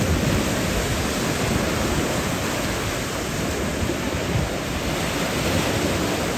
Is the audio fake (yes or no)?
no